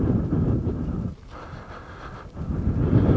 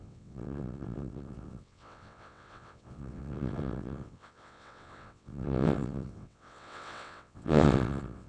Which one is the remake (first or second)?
second